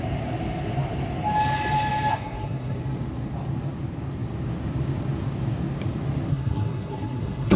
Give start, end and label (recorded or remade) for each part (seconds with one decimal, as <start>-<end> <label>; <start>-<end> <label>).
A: 0.0-2.1 recorded; 2.1-2.8 remade; 2.8-6.3 recorded; 6.3-7.6 remade